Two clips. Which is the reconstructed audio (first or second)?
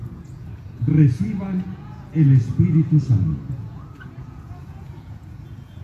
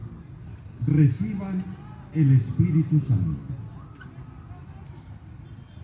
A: first